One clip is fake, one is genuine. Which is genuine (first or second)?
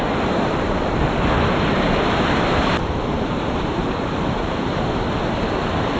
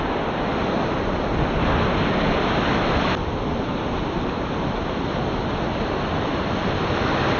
second